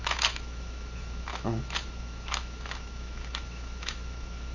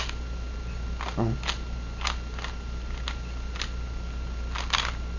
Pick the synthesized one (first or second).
first